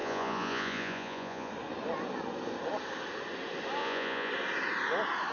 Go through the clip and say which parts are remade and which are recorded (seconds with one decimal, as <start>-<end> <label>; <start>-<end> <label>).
0.0-1.5 remade; 1.5-3.8 recorded; 3.8-4.3 remade; 4.3-5.3 recorded